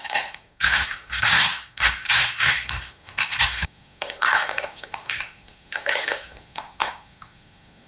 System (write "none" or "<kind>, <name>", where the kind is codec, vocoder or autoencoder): codec, SNAC